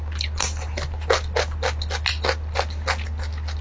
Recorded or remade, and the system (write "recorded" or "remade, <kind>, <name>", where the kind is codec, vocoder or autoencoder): recorded